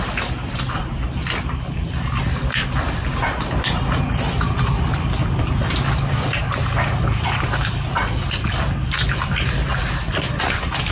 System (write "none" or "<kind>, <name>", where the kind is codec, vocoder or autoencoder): none